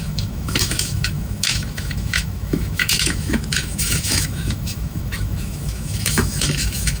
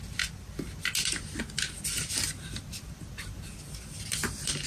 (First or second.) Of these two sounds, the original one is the second